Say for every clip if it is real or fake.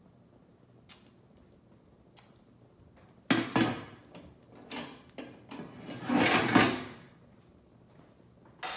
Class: real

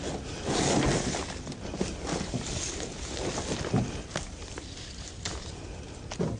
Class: real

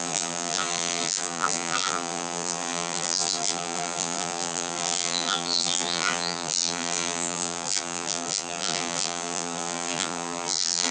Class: fake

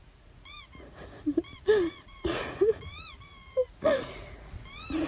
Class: fake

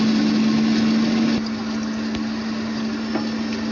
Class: real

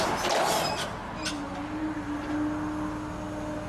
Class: real